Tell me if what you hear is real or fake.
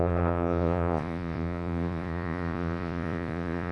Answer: fake